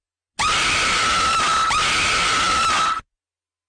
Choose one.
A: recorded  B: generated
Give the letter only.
A